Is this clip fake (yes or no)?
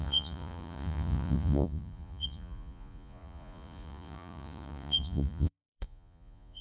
yes